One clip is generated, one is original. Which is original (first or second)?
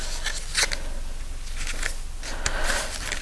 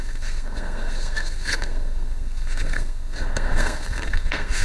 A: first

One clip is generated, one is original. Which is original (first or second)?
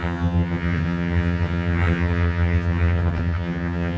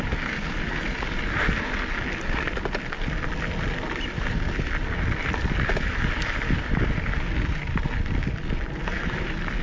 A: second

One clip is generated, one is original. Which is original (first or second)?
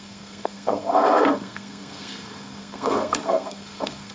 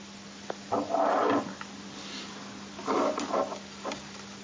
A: second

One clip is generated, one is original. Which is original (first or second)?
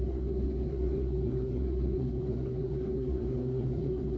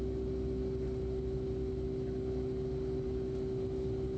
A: second